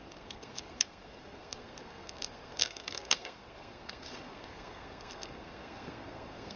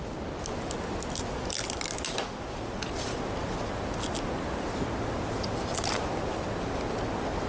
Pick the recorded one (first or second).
second